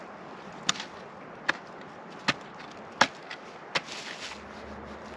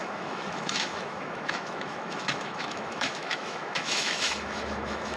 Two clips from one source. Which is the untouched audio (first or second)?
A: first